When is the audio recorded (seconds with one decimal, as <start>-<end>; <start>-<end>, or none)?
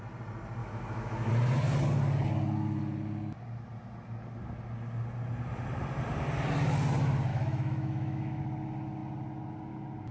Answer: 0.0-0.6; 1.3-7.3; 8.4-10.1